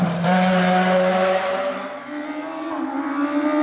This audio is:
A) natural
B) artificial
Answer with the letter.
A